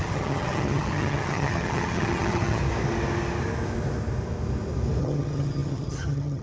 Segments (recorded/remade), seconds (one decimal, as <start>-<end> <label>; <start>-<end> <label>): 0.0-2.6 remade; 2.6-5.0 recorded; 5.0-6.4 remade